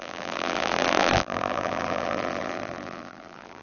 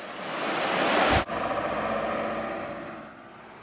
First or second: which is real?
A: second